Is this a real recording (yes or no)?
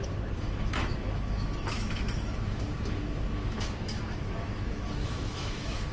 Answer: no